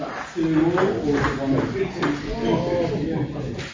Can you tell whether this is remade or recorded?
recorded